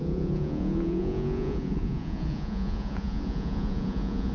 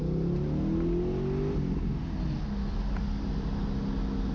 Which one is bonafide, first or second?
second